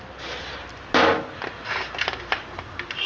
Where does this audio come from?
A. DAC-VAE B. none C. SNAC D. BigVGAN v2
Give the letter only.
B